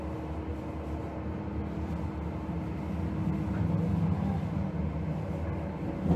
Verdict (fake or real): real